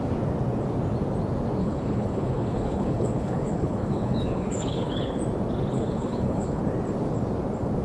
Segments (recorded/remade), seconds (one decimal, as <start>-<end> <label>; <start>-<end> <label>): 0.0-1.6 recorded; 1.6-5.2 remade; 5.2-5.7 recorded; 5.7-6.6 remade; 6.6-7.8 recorded